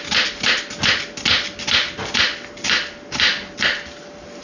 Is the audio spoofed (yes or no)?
no